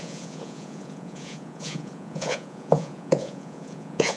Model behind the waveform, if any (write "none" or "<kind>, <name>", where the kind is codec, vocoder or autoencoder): vocoder, Vocos